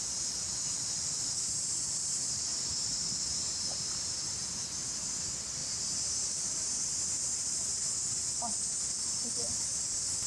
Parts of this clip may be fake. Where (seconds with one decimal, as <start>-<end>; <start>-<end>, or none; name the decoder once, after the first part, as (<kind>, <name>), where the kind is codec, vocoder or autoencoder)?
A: 2.2-3.6 (vocoder, BigVGAN v2); 5.6-7.9